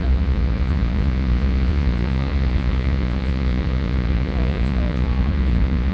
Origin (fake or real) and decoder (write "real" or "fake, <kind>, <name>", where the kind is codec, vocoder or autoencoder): fake, vocoder, Vocos